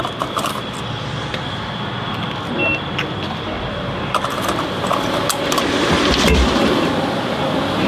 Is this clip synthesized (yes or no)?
no